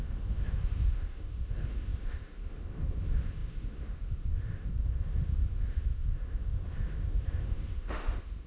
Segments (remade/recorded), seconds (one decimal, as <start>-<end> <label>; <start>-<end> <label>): 0.0-8.5 remade